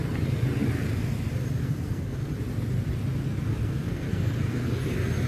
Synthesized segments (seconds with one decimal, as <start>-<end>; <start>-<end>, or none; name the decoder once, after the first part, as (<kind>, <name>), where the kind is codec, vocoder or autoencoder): 1.6-2.3 (codec, SNAC); 3.6-4.7